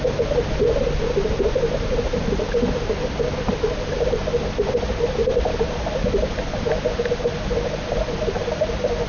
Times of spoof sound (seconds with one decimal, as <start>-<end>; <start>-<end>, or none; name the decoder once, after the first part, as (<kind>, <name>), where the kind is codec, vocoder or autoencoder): 5.2-5.8 (vocoder, BigVGAN v2)